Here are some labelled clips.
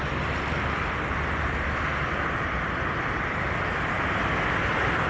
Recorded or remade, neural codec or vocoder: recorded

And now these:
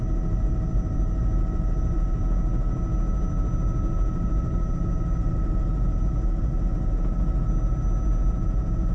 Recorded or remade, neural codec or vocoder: recorded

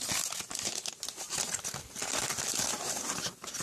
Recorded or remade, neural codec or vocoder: recorded